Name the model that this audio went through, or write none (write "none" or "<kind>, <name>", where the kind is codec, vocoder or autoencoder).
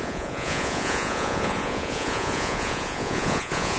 vocoder, Vocos